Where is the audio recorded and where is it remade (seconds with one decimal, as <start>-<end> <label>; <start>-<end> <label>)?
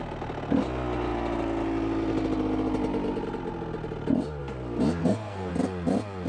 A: 0.0-5.0 recorded; 5.0-5.5 remade; 5.5-6.3 recorded